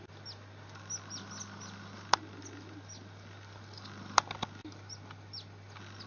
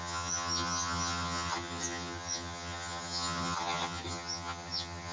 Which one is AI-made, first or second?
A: second